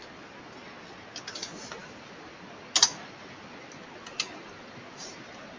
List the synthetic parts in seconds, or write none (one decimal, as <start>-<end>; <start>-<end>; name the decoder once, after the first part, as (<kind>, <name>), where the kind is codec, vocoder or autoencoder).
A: none